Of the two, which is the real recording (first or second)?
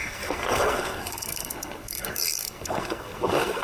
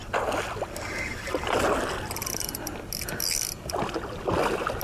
second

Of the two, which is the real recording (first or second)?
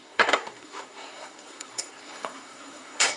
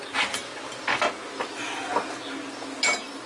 second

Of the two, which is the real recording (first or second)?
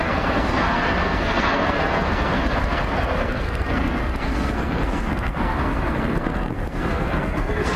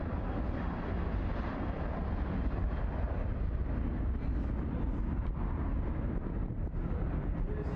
second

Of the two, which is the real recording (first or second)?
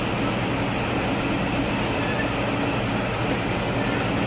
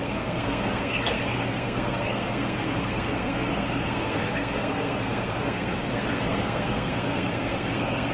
first